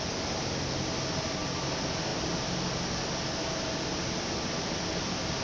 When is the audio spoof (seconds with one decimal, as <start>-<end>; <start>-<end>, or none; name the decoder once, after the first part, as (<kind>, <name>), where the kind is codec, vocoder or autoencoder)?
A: none